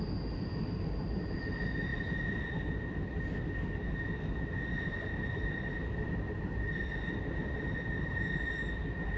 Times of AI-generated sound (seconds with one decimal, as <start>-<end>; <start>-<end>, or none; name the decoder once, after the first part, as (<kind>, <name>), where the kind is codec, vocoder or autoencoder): 1.9-2.4 (vocoder, BigVGAN v2)